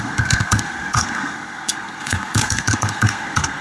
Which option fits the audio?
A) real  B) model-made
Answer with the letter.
B